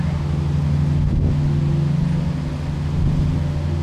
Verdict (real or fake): real